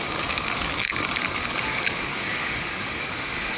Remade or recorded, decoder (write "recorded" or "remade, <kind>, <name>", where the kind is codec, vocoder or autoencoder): remade, codec, DAC